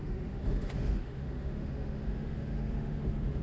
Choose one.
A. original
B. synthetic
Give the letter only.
B